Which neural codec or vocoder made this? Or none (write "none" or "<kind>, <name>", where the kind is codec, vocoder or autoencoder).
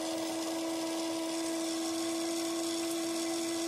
none